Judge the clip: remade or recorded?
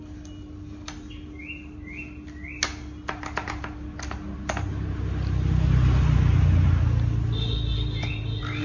recorded